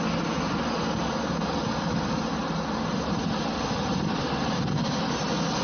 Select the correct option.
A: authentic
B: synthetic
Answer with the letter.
A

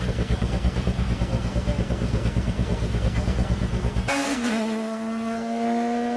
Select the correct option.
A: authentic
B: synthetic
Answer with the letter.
B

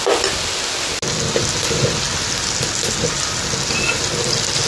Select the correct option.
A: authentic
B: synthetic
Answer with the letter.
A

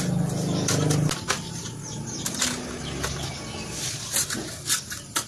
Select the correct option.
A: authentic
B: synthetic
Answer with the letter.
A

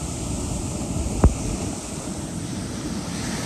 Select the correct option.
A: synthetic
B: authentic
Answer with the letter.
B